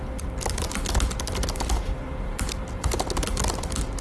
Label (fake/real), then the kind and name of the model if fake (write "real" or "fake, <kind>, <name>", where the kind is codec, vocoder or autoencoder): real